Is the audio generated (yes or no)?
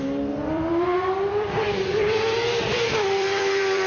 yes